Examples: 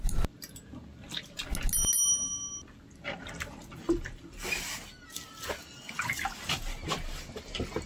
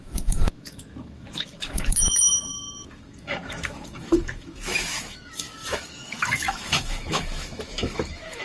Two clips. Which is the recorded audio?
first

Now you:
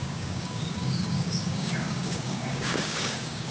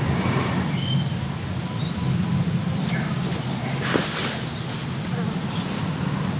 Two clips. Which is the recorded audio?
second